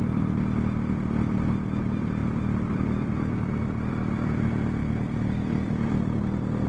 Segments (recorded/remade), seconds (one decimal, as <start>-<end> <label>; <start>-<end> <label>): 0.0-6.7 remade